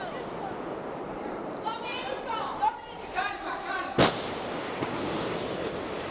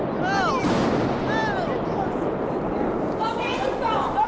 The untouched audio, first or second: second